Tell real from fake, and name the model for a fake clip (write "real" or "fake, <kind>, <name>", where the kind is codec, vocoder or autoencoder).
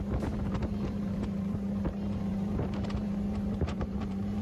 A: fake, vocoder, BigVGAN v2